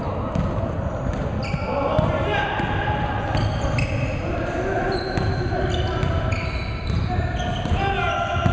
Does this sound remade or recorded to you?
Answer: recorded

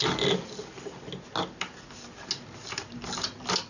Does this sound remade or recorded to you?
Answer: recorded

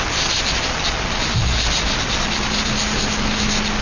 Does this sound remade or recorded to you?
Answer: recorded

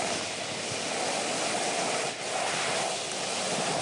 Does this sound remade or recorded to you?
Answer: recorded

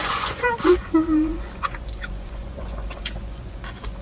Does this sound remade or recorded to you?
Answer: remade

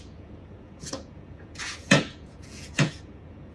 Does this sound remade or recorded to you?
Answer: remade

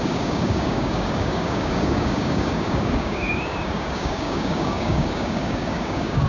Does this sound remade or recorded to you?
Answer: remade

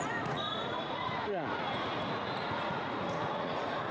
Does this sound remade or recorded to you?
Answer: remade